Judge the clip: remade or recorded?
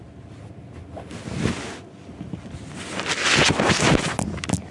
recorded